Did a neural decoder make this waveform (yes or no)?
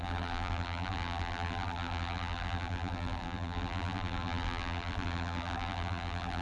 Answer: yes